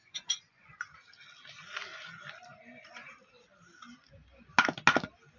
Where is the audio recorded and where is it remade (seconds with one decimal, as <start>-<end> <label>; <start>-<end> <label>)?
0.0-0.8 remade; 0.8-5.4 recorded